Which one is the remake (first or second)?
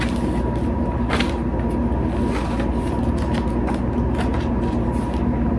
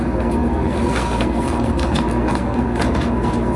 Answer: second